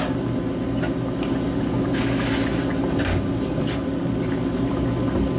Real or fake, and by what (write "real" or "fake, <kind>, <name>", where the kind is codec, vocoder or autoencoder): real